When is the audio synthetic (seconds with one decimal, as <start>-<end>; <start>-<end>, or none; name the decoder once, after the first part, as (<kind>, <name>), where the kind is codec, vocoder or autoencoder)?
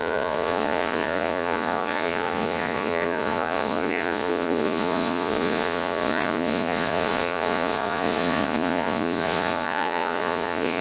0.0-10.8 (vocoder, Vocos)